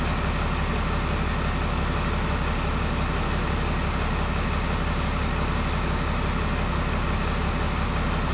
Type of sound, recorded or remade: recorded